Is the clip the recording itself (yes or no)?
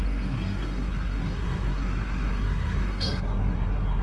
no